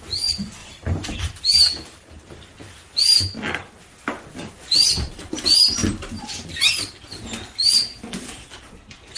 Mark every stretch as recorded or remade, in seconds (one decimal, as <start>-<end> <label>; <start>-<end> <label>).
0.0-0.6 recorded; 0.6-2.4 remade; 2.4-9.2 recorded